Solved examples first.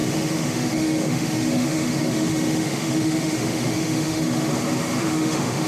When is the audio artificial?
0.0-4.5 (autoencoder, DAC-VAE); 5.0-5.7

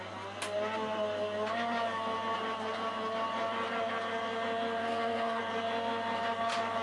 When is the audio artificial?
4.8-5.4 (codec, SNAC)

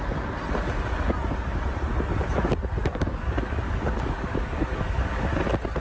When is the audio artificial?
2.8-5.3 (codec, DAC)

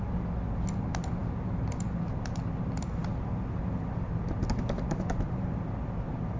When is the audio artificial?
none

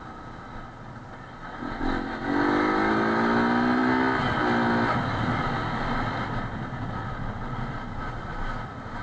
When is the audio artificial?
none

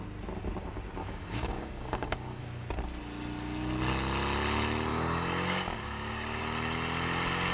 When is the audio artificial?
1.0-2.4 (codec, DAC); 4.9-6.4

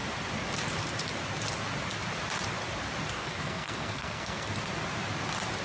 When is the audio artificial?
3.2-4.5 (codec, SNAC)